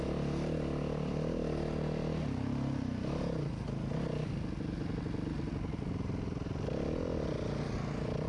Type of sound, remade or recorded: recorded